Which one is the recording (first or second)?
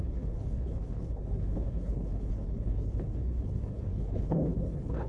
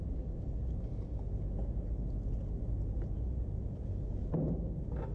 second